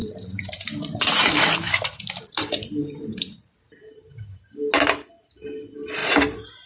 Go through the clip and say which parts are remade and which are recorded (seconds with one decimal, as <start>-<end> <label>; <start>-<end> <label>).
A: 0.0-3.8 remade; 3.8-6.0 recorded; 6.0-6.7 remade